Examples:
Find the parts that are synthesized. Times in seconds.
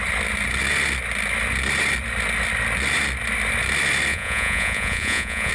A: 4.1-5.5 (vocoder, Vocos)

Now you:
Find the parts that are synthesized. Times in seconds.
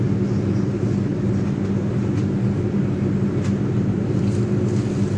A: none